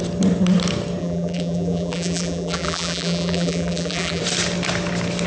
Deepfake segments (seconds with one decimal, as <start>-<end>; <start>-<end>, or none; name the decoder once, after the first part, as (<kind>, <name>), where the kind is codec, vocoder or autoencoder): 1.0-4.2 (vocoder, BigVGAN v2)